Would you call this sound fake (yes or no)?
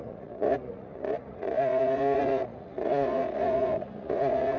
yes